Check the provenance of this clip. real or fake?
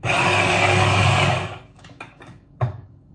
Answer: fake